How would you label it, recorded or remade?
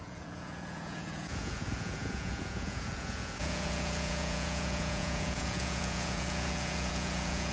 remade